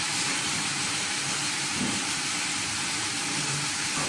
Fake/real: fake